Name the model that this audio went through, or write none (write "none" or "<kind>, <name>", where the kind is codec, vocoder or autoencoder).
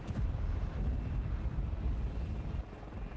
vocoder, BigVGAN v2